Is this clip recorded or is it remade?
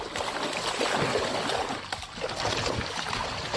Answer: recorded